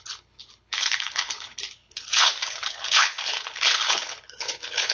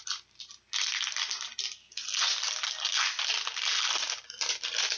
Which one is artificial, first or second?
first